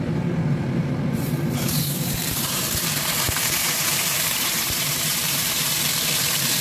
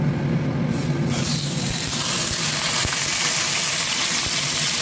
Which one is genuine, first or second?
second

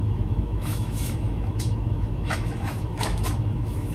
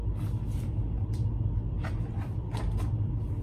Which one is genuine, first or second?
second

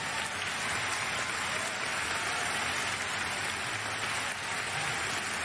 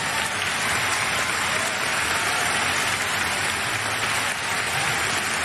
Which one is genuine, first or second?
first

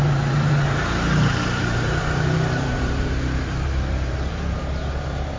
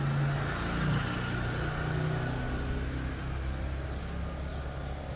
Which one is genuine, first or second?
second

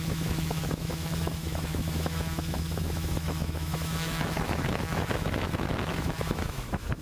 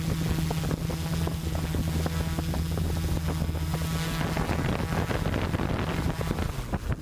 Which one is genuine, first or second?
second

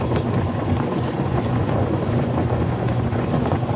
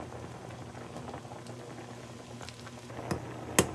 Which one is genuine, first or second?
second